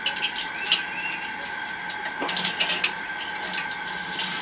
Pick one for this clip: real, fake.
real